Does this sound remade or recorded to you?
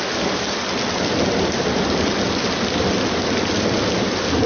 recorded